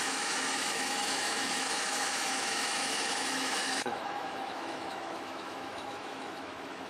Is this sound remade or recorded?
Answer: remade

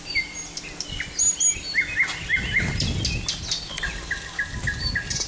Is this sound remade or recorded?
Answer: recorded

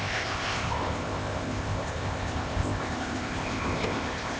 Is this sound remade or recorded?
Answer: remade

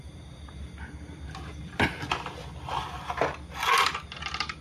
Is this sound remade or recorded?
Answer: recorded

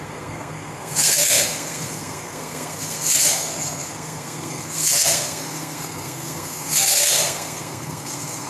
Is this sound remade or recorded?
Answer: remade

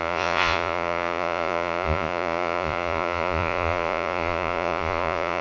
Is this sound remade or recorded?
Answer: remade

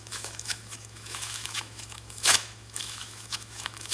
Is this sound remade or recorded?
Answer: remade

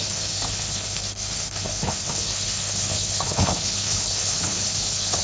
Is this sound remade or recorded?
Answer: remade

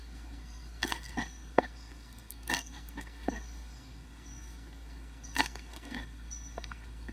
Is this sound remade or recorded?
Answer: remade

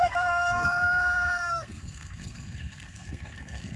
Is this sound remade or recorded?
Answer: remade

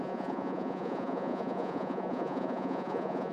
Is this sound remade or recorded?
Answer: remade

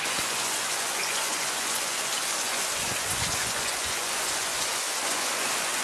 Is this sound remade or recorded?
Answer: remade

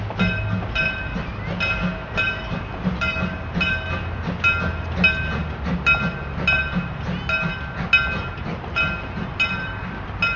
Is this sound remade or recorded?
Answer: recorded